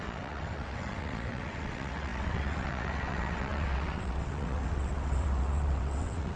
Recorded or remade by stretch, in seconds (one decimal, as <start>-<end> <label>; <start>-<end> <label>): 0.0-6.4 remade